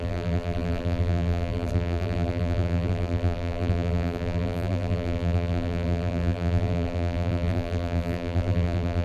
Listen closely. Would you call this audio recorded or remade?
remade